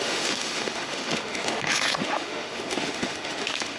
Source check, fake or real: fake